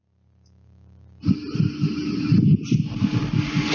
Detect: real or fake real